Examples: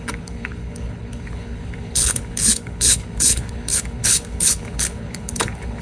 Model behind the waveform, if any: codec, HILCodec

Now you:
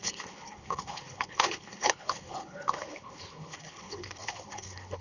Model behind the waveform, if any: codec, HILCodec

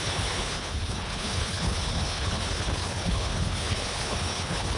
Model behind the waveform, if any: codec, HILCodec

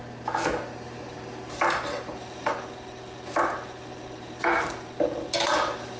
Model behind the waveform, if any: none